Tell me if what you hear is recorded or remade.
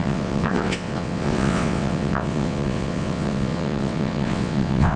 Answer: remade